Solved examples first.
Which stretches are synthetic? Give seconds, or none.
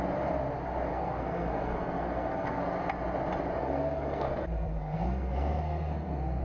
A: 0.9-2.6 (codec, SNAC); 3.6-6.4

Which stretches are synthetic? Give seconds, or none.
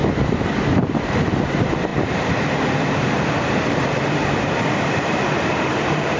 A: 0.7-6.2 (vocoder, BigVGAN v2)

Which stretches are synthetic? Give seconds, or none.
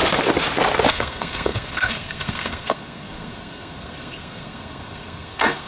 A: 0.9-5.7 (codec, SNAC)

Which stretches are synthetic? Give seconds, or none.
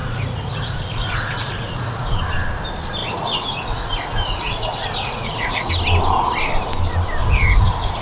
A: 0.0-2.2 (vocoder, Vocos); 3.0-5.7; 7.2-8.0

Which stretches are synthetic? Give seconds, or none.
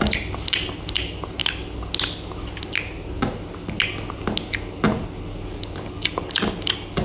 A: none